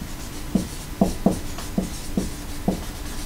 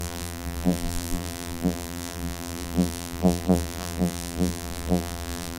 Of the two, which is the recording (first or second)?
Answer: first